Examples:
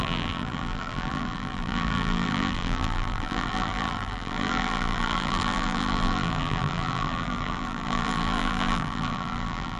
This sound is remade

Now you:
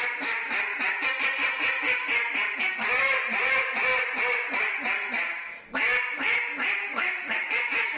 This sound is remade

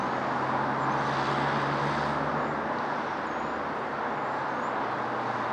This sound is recorded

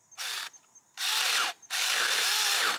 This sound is recorded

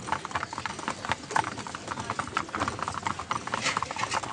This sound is recorded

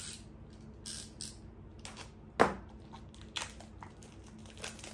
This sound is recorded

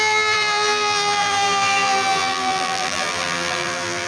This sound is remade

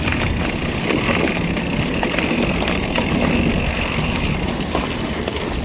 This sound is recorded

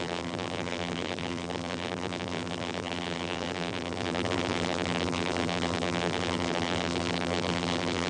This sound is remade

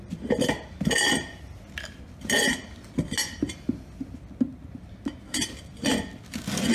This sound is recorded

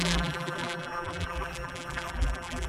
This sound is remade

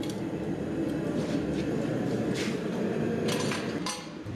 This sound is remade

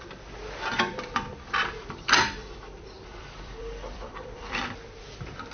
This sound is remade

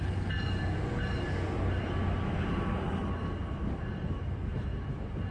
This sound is recorded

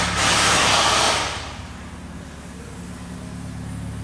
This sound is recorded